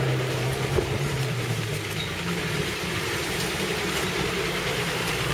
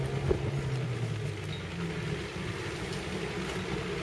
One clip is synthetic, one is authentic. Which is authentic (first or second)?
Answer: second